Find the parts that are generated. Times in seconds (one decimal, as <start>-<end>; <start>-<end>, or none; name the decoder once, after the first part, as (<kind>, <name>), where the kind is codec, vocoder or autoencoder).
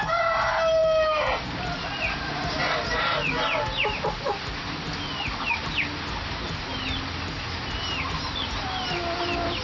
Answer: none